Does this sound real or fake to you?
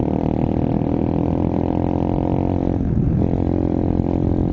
real